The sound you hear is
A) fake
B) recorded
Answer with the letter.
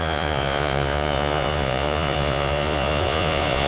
A